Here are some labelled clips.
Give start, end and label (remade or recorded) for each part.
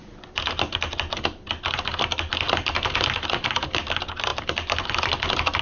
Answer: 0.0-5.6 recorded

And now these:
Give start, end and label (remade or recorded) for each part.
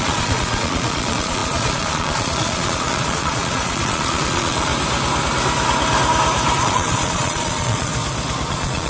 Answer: 0.0-4.7 remade; 4.7-6.6 recorded; 6.6-7.9 remade; 7.9-8.5 recorded; 8.5-8.9 remade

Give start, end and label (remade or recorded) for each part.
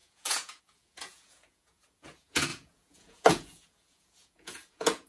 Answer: 0.0-5.1 remade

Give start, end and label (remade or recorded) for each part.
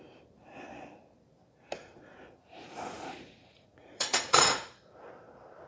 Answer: 0.0-1.8 recorded; 1.8-4.6 remade; 4.6-5.7 recorded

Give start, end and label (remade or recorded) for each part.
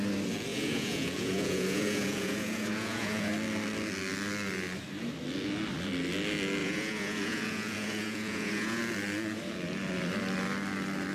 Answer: 0.0-0.5 recorded; 0.5-3.3 remade; 3.3-6.6 recorded; 6.6-8.8 remade; 8.8-11.1 recorded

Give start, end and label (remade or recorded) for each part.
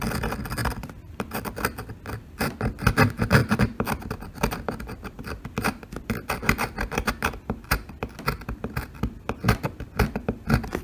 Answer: 0.0-0.6 recorded; 0.6-1.9 remade; 1.9-3.4 recorded; 3.4-7.1 remade; 7.1-10.8 recorded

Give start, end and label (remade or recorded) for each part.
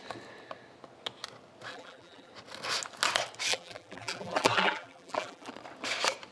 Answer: 0.0-1.7 recorded; 1.7-2.3 remade; 2.3-3.5 recorded; 3.5-5.5 remade; 5.5-6.3 recorded